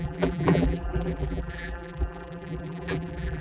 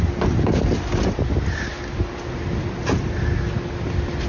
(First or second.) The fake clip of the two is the first